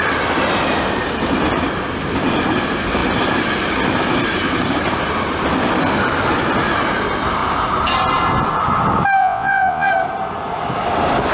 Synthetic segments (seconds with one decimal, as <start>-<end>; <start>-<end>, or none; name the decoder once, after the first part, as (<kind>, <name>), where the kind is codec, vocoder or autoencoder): 9.2-9.9 (vocoder, Vocos)